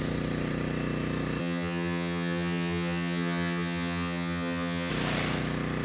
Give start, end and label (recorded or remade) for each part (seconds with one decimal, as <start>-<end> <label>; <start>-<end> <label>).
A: 0.0-1.4 recorded; 1.4-4.9 remade; 4.9-5.8 recorded